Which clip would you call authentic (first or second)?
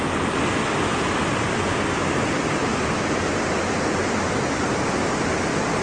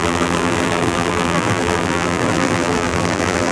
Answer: first